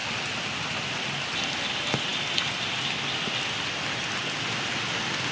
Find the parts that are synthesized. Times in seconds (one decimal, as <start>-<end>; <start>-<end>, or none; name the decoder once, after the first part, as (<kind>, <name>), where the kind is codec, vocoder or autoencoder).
none